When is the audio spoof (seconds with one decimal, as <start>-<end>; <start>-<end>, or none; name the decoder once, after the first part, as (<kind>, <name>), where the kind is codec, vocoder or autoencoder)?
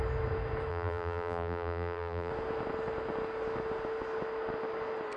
0.7-2.3 (vocoder, BigVGAN v2)